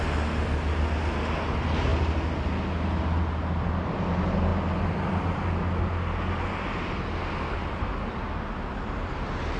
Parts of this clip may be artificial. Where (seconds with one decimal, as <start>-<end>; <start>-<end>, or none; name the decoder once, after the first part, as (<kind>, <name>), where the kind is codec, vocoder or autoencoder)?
none